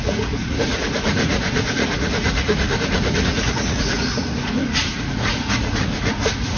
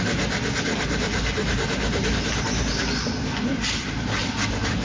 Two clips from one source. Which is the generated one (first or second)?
first